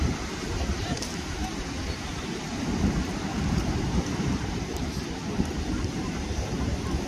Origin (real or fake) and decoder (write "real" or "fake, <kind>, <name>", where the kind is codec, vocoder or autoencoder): fake, vocoder, BigVGAN v2